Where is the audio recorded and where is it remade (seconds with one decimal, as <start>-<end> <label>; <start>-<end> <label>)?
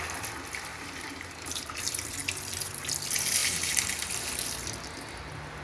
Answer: 0.0-0.7 recorded; 0.7-1.8 remade; 1.8-3.4 recorded; 3.4-4.3 remade; 4.3-5.6 recorded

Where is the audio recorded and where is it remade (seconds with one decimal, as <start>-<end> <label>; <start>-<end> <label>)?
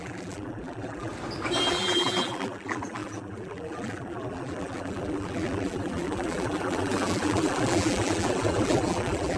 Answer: 0.0-1.1 remade; 1.1-1.7 recorded; 1.7-9.4 remade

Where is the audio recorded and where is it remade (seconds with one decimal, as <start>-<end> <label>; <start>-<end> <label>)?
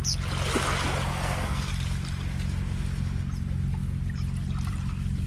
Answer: 0.0-1.1 recorded; 1.1-1.7 remade; 1.7-5.3 recorded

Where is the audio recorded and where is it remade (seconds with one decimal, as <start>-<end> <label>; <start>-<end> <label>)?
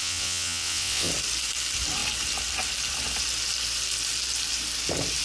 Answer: 0.0-1.1 remade; 1.1-5.2 recorded